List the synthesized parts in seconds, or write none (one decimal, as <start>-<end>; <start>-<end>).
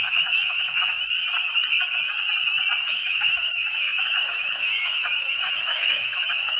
0.0-0.9; 2.8-6.6